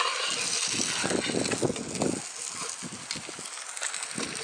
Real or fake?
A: real